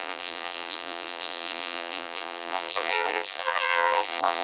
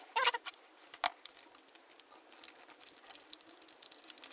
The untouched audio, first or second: second